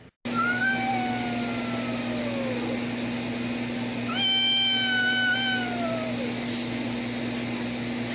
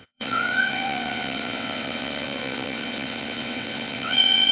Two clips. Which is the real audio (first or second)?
first